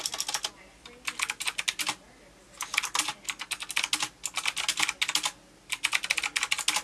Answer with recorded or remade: recorded